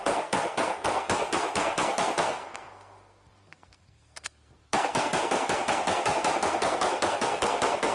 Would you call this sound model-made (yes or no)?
yes